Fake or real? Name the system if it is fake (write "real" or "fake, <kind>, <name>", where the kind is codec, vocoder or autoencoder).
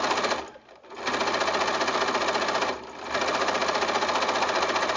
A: real